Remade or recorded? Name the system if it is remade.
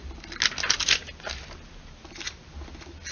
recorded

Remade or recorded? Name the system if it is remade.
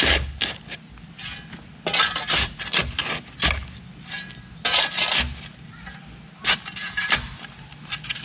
recorded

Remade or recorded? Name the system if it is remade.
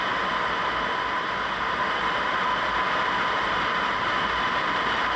recorded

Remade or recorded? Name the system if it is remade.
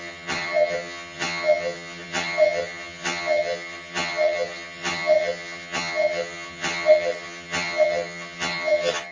remade, vocoder, HiFi-GAN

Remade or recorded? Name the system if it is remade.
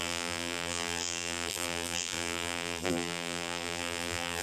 remade, vocoder, BigVGAN v2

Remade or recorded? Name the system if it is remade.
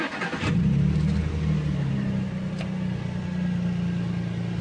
recorded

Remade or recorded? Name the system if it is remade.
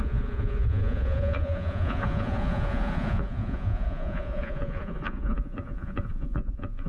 remade, vocoder, Vocos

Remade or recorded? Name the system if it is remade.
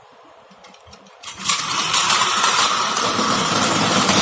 remade, vocoder, BigVGAN v2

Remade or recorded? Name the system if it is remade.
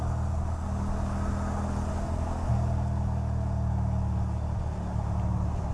recorded